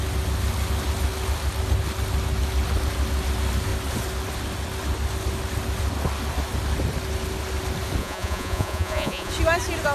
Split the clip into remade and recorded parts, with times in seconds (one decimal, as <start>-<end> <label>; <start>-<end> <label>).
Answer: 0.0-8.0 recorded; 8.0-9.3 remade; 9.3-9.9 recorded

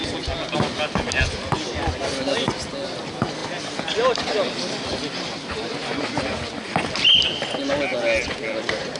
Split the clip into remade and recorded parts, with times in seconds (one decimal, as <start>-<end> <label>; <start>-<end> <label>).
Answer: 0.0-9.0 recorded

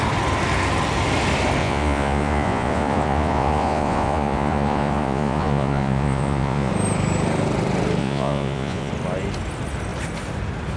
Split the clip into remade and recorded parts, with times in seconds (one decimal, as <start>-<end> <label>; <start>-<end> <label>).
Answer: 0.0-1.6 recorded; 1.6-6.7 remade; 6.7-8.0 recorded; 8.0-8.9 remade; 8.9-10.8 recorded

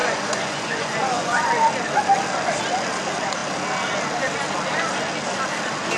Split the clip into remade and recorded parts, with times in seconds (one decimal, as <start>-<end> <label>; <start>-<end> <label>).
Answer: 0.0-1.5 remade; 1.5-6.0 recorded

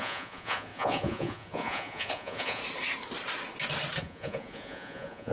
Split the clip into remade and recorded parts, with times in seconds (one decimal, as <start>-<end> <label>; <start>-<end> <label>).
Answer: 0.0-2.6 remade; 2.6-4.0 recorded; 4.0-5.3 remade

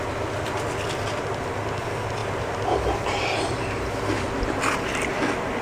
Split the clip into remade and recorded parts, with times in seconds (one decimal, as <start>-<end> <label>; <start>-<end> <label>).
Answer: 0.0-5.6 recorded